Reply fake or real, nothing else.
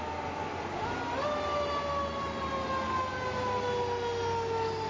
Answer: real